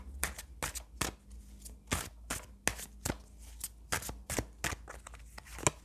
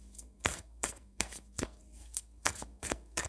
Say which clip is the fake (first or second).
second